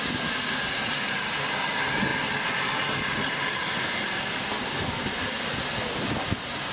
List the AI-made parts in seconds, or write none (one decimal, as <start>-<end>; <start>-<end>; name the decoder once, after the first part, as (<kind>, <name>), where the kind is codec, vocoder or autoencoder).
none